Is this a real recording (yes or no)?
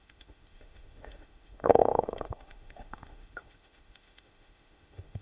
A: no